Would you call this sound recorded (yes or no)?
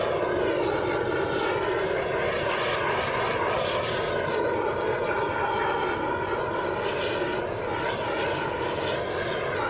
yes